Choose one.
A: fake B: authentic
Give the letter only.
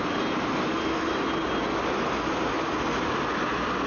B